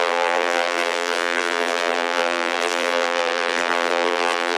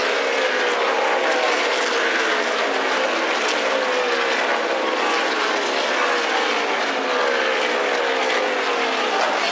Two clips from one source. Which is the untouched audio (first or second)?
second